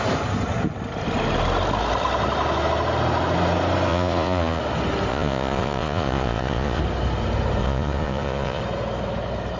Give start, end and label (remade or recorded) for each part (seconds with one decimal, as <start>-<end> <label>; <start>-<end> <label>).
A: 0.0-3.9 recorded; 3.9-4.6 remade; 4.6-5.1 recorded; 5.1-6.8 remade; 6.8-7.6 recorded; 7.6-8.6 remade; 8.6-9.6 recorded